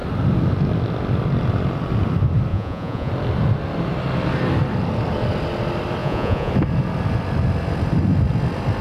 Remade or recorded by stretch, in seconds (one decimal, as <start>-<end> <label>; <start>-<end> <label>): 0.0-2.5 recorded; 2.5-3.1 remade; 3.1-6.0 recorded; 6.0-6.5 remade; 6.5-8.8 recorded